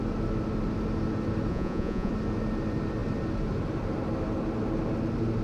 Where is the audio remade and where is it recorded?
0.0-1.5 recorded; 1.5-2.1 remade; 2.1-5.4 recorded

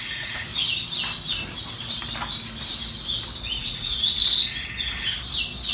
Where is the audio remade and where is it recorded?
0.0-0.5 remade; 0.5-3.6 recorded; 3.6-4.2 remade; 4.2-5.7 recorded